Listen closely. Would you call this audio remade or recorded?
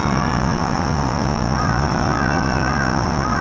remade